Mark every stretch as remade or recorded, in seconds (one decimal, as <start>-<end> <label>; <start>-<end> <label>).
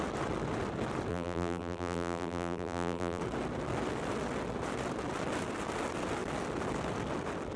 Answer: 0.0-1.1 recorded; 1.1-3.2 remade; 3.2-7.6 recorded